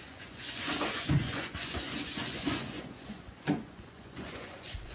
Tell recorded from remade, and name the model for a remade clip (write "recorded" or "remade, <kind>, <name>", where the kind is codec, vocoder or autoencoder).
remade, vocoder, Vocos